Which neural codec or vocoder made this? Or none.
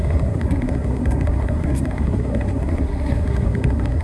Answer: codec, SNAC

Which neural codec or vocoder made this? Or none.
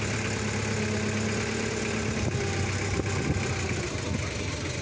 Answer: none